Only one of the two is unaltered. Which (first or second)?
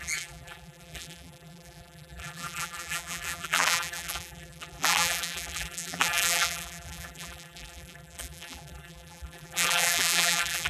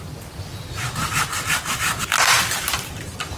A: second